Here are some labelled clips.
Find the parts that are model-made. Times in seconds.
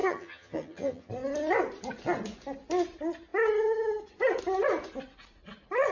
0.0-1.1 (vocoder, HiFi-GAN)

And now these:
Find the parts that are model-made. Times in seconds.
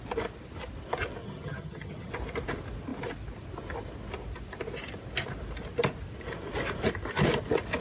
1.2-2.1 (vocoder, HiFi-GAN)